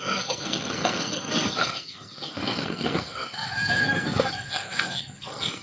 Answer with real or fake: fake